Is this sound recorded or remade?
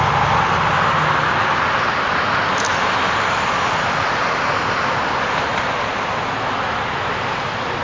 recorded